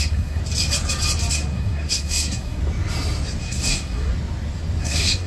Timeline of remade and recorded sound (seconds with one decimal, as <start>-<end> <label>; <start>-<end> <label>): 0.0-0.4 remade; 0.4-1.3 recorded; 1.3-2.6 remade; 2.6-3.4 recorded; 3.4-4.1 remade; 4.1-4.8 recorded; 4.8-5.3 remade